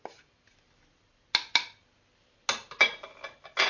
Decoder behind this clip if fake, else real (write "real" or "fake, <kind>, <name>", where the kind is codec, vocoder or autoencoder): real